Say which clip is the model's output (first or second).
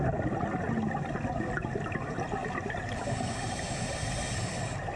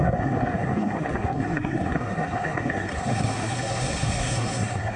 second